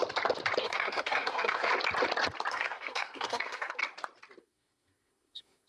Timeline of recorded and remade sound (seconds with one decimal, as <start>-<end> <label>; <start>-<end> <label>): 0.0-0.6 recorded; 0.6-1.7 remade; 1.7-2.5 recorded; 2.5-3.8 remade; 3.8-4.4 recorded; 4.4-5.7 remade